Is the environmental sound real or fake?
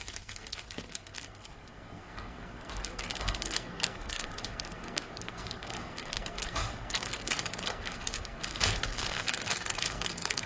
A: fake